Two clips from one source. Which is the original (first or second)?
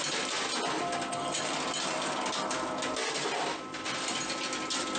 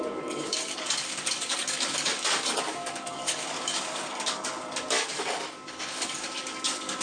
first